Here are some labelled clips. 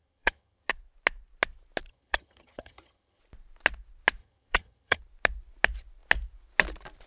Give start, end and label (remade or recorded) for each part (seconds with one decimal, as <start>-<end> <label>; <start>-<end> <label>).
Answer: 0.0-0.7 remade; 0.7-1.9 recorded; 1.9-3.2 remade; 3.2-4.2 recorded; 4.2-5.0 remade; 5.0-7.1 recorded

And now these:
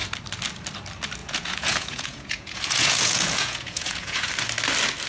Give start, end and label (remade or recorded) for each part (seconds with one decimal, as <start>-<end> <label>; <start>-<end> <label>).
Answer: 0.0-1.2 recorded; 1.2-4.3 remade; 4.3-5.1 recorded

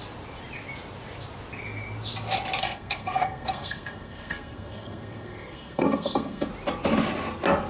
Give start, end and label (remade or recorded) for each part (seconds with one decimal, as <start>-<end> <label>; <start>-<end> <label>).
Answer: 0.0-2.6 recorded; 2.6-6.5 remade; 6.5-7.7 recorded